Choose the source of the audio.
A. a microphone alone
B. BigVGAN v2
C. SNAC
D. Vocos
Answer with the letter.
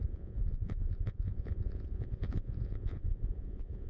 D